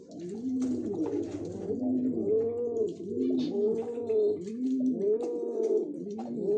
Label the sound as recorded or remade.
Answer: recorded